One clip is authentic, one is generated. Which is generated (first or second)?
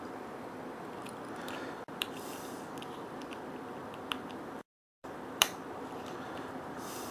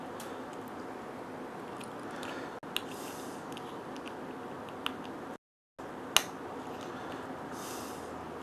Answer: first